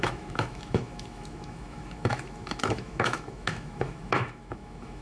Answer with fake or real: fake